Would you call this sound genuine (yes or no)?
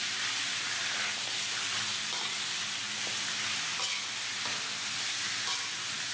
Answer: yes